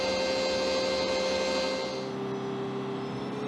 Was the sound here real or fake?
real